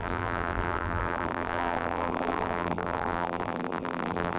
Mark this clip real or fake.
fake